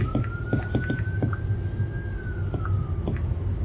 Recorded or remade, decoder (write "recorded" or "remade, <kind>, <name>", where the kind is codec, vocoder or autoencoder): recorded